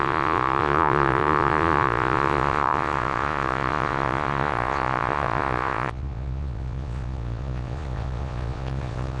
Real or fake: fake